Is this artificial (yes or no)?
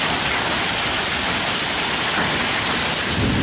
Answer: no